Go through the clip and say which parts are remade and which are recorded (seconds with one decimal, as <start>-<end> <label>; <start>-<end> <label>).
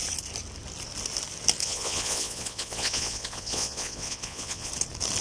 0.0-1.6 recorded; 1.6-4.7 remade; 4.7-5.2 recorded